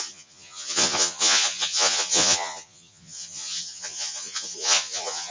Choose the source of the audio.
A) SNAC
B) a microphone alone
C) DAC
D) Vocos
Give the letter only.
D